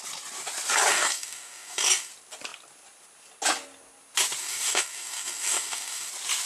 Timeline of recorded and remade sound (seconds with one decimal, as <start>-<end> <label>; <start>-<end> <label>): 0.0-0.9 recorded; 0.9-2.1 remade; 2.1-4.4 recorded; 4.4-6.1 remade; 6.1-6.5 recorded